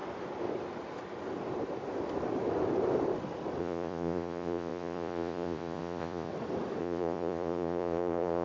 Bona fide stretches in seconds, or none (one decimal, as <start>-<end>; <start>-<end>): 0.0-3.6; 6.3-6.8